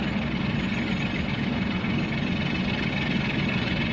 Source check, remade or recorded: recorded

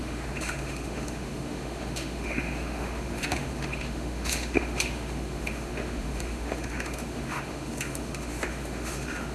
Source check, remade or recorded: remade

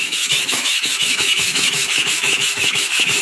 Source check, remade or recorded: remade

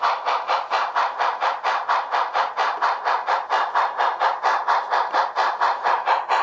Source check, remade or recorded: recorded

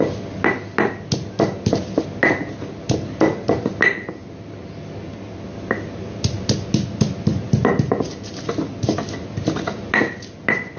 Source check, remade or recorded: recorded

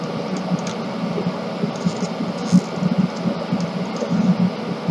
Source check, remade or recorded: recorded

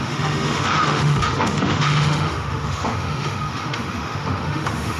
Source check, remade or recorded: remade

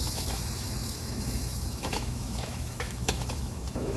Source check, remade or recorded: remade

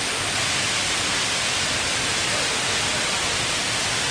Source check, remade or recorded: recorded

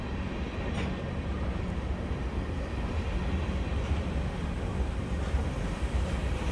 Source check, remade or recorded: recorded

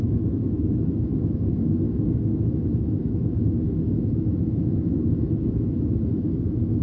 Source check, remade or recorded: remade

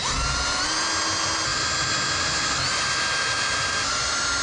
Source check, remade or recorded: recorded